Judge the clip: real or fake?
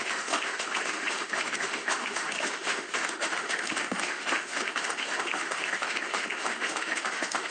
fake